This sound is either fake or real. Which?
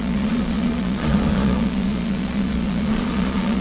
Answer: fake